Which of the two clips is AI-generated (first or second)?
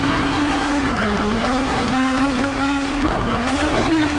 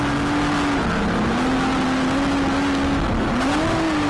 first